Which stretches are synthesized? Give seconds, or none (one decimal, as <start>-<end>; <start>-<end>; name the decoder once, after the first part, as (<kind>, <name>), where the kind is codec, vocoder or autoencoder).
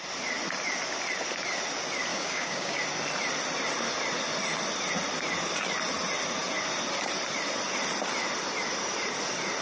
2.1-2.8 (codec, DAC)